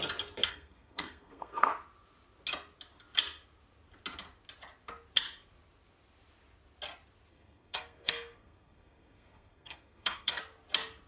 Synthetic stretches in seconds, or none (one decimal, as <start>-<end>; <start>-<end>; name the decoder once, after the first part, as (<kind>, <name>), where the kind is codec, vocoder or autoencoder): 0.5-1.7 (codec, SNAC); 7.3-10.4